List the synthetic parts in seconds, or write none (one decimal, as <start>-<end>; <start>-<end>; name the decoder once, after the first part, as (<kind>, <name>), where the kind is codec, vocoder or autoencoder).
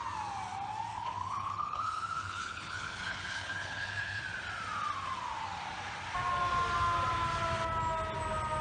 0.9-4.2 (codec, HILCodec)